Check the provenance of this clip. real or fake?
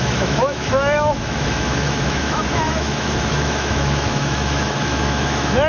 fake